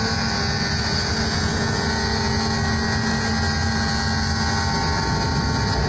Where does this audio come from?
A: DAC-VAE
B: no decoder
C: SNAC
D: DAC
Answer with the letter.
B